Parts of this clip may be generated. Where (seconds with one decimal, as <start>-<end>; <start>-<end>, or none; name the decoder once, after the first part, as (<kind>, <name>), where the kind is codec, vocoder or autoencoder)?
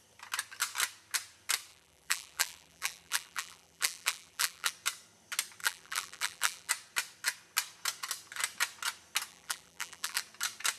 1.7-4.7 (vocoder, BigVGAN v2); 5.6-6.7; 9.3-10.2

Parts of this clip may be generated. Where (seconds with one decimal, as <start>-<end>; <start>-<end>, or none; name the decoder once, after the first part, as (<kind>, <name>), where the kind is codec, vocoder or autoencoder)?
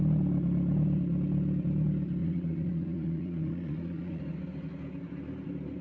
2.2-4.2 (vocoder, Vocos)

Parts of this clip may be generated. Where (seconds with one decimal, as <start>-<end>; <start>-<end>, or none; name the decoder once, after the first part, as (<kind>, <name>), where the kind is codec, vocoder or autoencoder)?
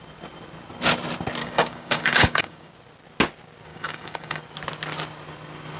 1.4-2.7 (codec, DAC); 3.7-4.4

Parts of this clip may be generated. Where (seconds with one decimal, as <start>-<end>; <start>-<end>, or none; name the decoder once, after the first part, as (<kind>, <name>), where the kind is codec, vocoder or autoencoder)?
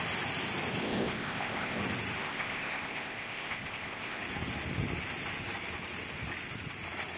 0.8-1.8 (codec, ZipCodec); 2.2-4.2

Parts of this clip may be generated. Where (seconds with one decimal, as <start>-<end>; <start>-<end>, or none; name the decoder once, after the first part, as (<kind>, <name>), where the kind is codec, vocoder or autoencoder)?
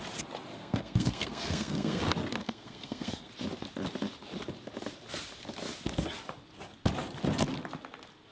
0.5-2.0 (codec, SNAC); 2.4-3.3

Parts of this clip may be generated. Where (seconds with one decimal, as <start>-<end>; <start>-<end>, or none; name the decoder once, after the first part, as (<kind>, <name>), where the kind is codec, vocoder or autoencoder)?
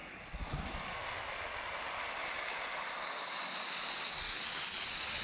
none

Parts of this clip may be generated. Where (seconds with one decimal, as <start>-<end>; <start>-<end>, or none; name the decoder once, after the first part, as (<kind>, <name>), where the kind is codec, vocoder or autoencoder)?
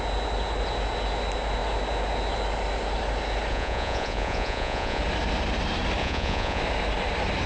3.5-5.0 (vocoder, Vocos); 6.0-6.6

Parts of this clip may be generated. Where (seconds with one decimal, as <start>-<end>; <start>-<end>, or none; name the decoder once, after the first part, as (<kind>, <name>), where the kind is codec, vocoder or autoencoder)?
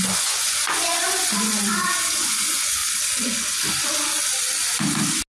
0.0-2.8 (vocoder, Vocos)